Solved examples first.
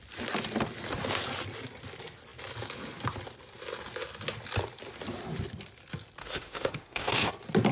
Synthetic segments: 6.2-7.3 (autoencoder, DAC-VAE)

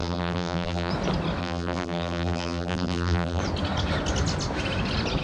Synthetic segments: 0.0-0.9 (vocoder, BigVGAN v2); 1.4-3.4

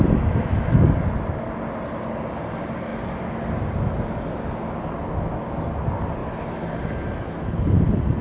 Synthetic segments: none

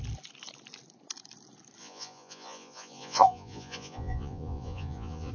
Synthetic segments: 1.8-5.3 (vocoder, Vocos)

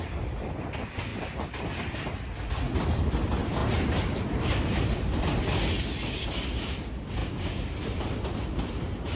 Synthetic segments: 1.1-2.0 (vocoder, BigVGAN v2); 3.6-5.2

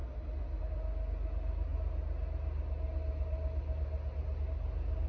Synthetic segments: none